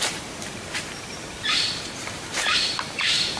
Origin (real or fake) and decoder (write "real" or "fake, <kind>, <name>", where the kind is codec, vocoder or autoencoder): fake, vocoder, BigVGAN v2